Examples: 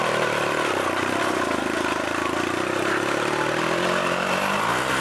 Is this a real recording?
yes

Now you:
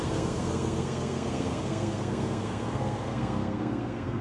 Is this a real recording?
no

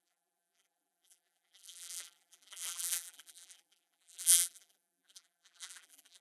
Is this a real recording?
no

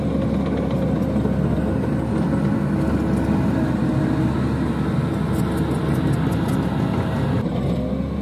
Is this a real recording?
yes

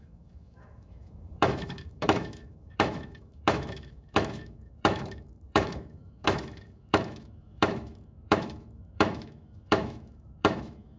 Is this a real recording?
no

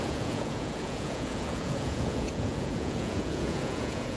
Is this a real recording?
no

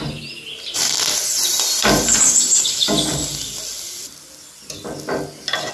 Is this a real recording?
yes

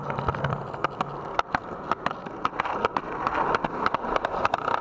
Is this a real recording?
yes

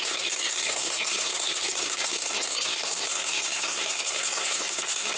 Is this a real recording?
no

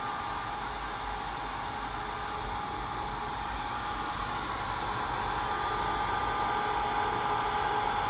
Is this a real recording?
yes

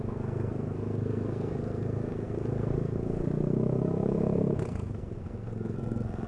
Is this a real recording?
no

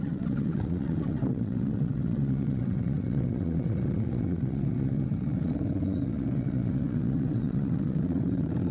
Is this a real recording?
no